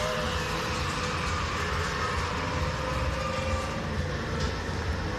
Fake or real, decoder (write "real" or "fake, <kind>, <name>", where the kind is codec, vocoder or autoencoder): real